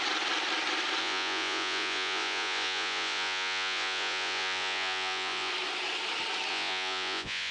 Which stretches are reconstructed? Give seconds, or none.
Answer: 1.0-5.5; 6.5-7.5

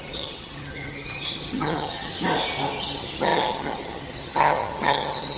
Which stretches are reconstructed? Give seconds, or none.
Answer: 0.0-2.1; 2.8-5.4

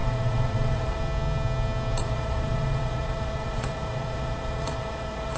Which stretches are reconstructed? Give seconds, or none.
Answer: 0.0-1.0; 2.0-5.4

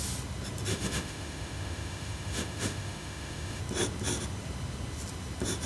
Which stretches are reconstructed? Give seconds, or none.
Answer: 0.7-3.6

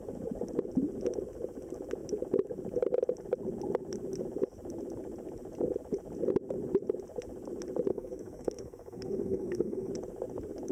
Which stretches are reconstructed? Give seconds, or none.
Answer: 7.9-9.9

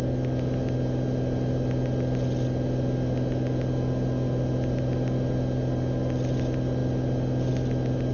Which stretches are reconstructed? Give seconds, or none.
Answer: none

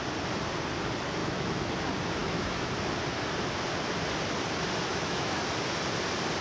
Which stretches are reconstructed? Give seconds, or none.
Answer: 1.2-1.7; 2.2-2.7; 4.9-5.4